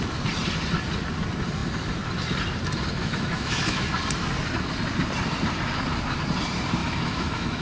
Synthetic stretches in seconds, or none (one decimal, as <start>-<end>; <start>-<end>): 3.0-3.9; 6.8-7.6